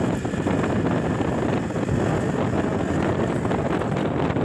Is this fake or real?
real